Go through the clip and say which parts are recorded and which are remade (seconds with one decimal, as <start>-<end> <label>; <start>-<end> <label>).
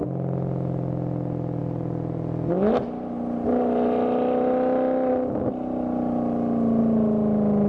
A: 0.0-7.7 recorded